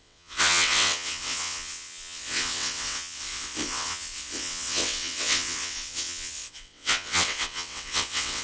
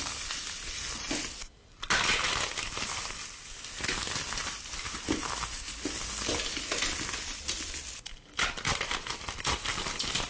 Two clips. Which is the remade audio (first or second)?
first